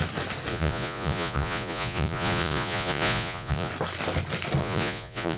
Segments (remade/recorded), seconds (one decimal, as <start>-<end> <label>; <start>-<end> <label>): 0.0-0.5 recorded; 0.5-3.7 remade; 3.7-4.6 recorded; 4.6-5.4 remade